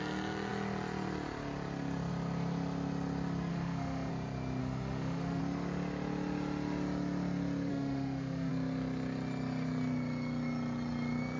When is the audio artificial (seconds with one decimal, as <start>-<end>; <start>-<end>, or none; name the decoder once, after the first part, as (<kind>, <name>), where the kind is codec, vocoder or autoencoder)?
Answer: 3.5-4.1 (autoencoder, DAC-VAE); 4.6-5.4; 7.7-8.5